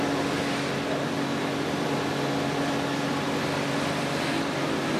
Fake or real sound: real